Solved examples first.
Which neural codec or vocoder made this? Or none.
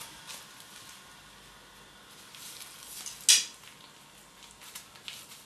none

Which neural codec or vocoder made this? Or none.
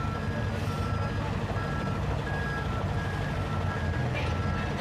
none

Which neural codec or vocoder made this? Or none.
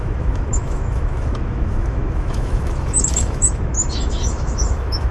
autoencoder, DAC-VAE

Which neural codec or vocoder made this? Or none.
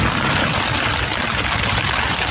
none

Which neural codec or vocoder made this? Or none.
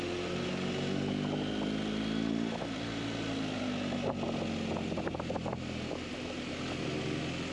none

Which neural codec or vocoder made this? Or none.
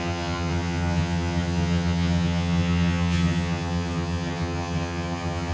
vocoder, HiFi-GAN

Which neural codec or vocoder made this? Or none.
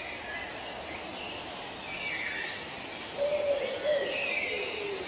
none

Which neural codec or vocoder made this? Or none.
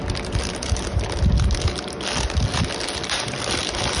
none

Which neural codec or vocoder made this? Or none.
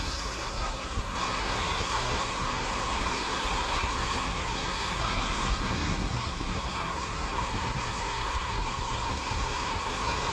codec, SNAC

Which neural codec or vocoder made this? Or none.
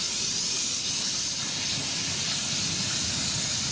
none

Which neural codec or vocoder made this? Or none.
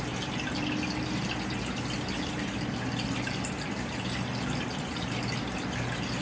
none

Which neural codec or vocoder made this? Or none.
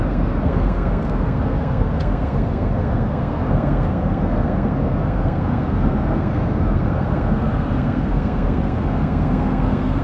codec, SNAC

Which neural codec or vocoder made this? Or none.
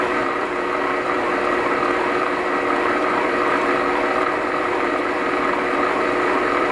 vocoder, BigVGAN v2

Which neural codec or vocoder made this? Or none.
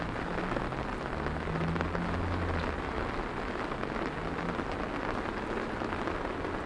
none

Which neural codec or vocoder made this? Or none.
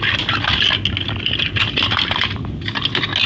none